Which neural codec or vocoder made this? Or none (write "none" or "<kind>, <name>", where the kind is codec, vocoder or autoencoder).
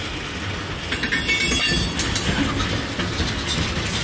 none